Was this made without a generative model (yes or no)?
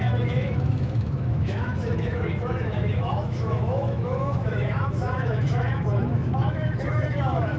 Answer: no